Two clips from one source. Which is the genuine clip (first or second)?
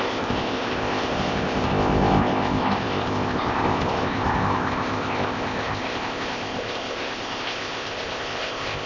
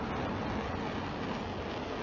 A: second